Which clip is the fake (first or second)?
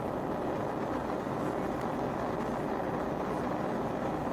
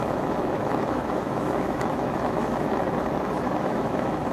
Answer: second